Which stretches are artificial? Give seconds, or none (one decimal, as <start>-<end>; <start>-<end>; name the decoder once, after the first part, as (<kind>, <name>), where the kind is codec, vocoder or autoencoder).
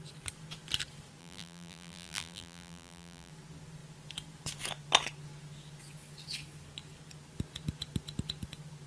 1.2-3.3 (vocoder, BigVGAN v2)